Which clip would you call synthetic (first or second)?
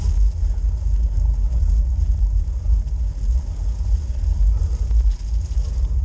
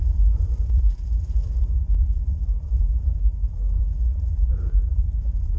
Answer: second